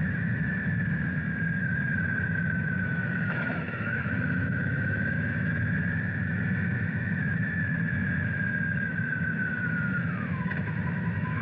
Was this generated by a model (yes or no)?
yes